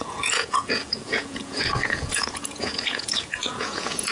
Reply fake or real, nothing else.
fake